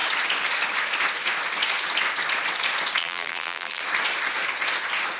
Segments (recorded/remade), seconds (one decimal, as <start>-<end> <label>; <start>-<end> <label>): 0.0-3.0 recorded; 3.0-3.8 remade; 3.8-5.2 recorded